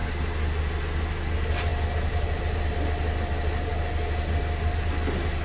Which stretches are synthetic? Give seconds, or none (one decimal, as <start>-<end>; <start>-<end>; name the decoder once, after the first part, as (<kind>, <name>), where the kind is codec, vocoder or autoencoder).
none